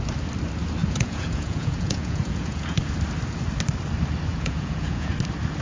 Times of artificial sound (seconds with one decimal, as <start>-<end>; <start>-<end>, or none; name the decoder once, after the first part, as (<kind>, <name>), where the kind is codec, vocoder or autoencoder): 0.8-2.8 (vocoder, Vocos); 4.3-5.1